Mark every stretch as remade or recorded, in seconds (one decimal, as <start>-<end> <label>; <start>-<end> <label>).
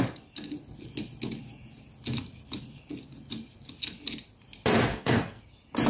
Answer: 0.0-4.9 recorded; 4.9-5.4 remade; 5.4-5.9 recorded